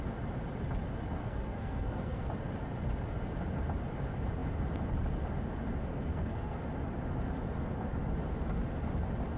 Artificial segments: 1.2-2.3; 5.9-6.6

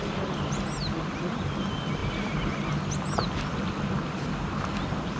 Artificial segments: none

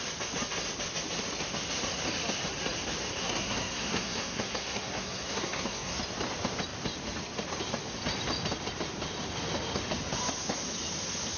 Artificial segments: 3.2-6.0

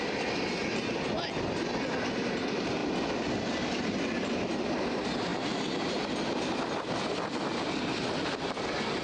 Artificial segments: none